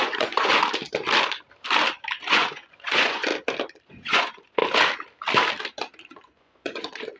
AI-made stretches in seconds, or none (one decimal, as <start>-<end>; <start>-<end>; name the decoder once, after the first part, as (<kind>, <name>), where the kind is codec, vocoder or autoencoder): 0.0-0.5 (vocoder, Vocos); 2.3-3.3; 3.9-4.6; 6.1-7.2